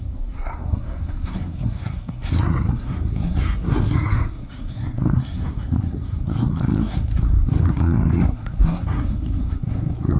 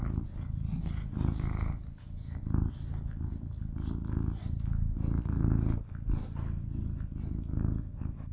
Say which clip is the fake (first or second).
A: first